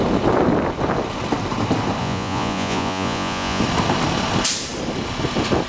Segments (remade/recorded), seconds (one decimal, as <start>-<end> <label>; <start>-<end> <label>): 0.0-2.0 recorded; 2.0-3.6 remade; 3.6-5.7 recorded